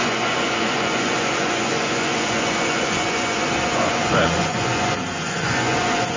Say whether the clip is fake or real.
fake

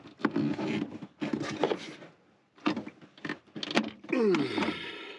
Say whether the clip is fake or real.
real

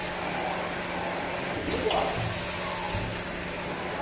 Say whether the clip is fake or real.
real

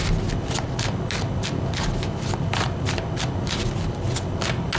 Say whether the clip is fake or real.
real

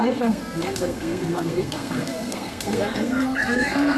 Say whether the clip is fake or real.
fake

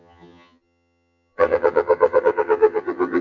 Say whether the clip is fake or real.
fake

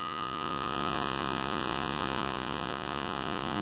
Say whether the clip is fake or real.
fake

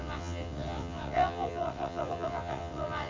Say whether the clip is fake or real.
fake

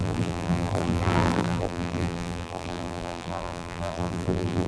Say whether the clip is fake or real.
fake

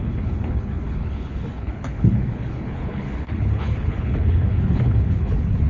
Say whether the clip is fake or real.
fake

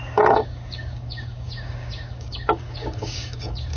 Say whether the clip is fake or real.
fake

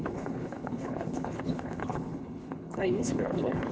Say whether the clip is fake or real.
fake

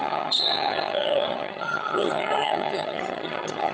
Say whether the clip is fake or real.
fake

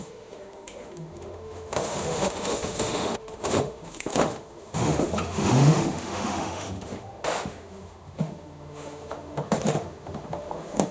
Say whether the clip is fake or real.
fake